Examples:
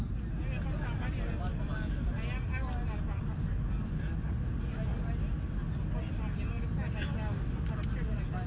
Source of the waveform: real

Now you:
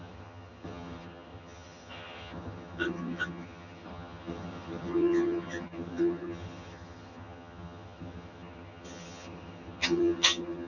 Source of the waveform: fake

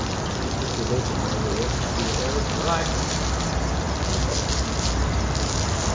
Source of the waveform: real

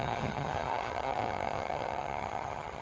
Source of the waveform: fake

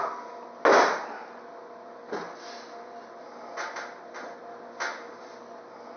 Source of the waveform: real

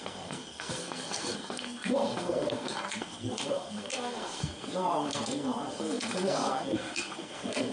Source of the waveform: fake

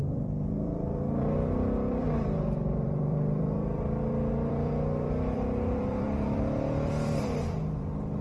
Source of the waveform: fake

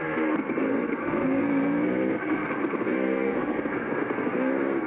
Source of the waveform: fake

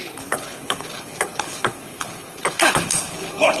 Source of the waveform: fake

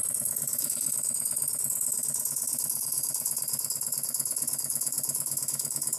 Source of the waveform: fake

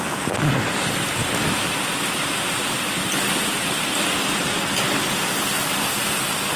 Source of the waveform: real